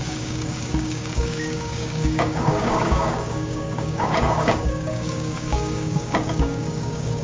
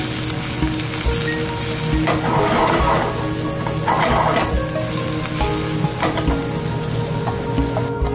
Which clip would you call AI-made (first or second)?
first